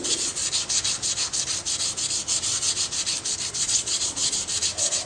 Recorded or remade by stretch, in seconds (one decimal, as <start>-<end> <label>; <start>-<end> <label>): 0.0-0.4 remade; 0.4-3.5 recorded; 3.5-4.2 remade; 4.2-5.1 recorded